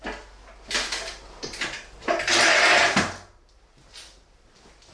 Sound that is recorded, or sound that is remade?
recorded